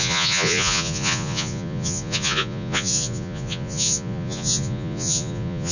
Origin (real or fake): fake